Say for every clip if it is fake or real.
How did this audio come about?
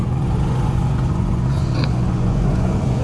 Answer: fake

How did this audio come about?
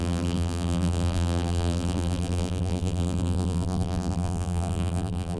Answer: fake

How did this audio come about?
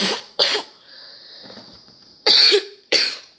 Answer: fake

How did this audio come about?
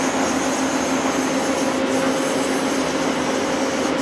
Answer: real